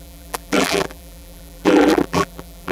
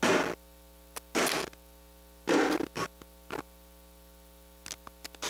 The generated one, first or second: first